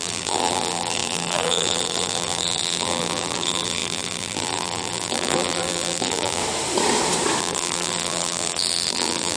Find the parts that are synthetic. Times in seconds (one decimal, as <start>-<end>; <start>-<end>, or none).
0.0-6.4; 7.4-9.4